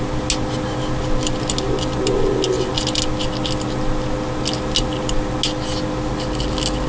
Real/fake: real